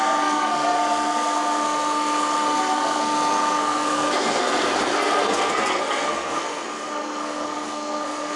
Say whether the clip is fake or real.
fake